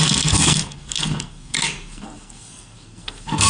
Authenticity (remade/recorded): remade